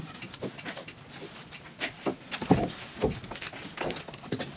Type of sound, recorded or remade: recorded